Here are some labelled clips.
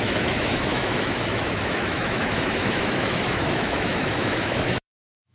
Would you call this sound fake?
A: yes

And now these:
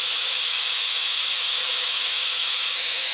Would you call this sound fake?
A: yes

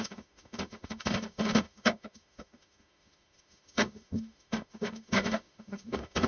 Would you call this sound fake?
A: yes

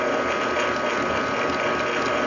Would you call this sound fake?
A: no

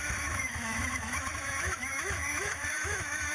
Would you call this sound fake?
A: yes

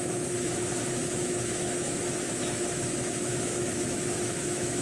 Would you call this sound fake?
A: yes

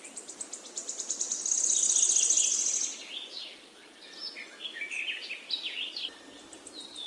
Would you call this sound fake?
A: no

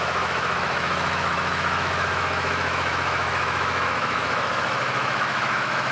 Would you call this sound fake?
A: yes